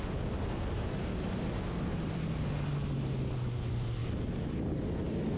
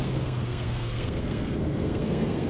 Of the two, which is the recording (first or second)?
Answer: first